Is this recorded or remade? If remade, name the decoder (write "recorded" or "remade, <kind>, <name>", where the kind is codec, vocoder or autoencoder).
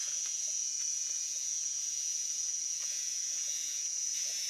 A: remade, vocoder, Vocos